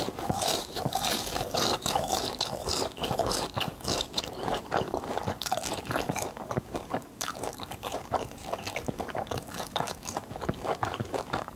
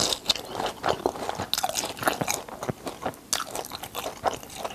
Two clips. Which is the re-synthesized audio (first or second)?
first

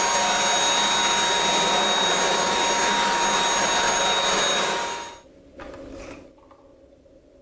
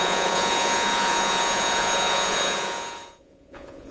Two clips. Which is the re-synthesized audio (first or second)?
second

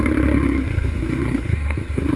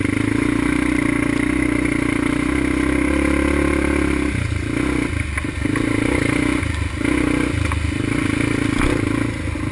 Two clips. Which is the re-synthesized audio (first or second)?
first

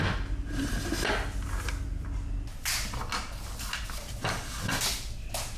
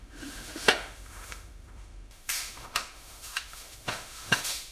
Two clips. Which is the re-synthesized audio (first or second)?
second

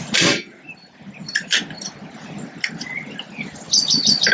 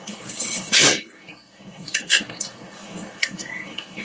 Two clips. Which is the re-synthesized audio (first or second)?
second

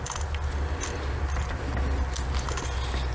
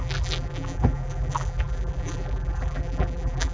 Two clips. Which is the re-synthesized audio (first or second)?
second